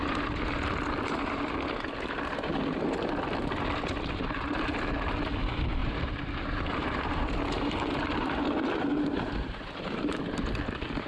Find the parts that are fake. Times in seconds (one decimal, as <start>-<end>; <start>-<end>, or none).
5.8-8.0; 8.9-10.2